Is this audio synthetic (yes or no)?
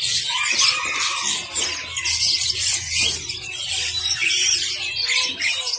no